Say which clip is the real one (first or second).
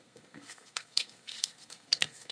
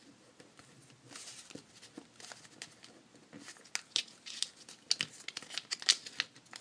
second